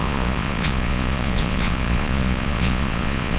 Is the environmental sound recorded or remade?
remade